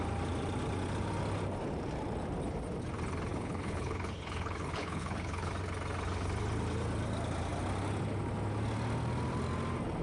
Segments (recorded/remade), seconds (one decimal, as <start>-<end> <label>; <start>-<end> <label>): 0.0-3.3 recorded; 3.3-5.5 remade; 5.5-10.0 recorded